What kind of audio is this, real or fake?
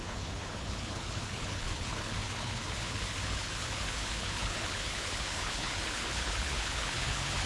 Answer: fake